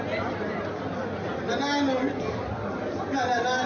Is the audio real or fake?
real